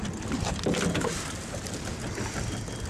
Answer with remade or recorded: recorded